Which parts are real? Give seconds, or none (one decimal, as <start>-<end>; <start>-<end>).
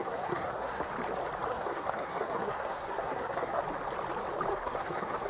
0.9-1.5; 3.6-4.5